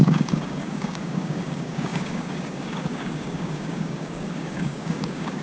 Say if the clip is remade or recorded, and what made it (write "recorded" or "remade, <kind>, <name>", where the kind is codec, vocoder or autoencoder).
remade, codec, DAC